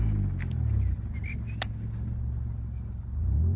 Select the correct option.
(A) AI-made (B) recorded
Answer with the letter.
B